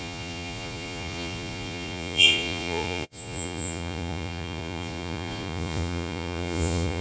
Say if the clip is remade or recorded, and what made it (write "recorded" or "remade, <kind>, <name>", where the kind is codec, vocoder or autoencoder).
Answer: remade, vocoder, Vocos